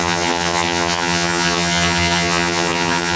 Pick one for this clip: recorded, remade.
remade